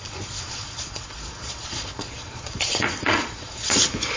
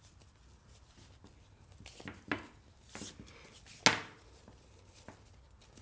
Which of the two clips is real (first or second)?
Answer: second